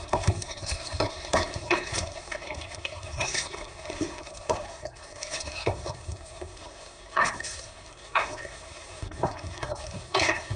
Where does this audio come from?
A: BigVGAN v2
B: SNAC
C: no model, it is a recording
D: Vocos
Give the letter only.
B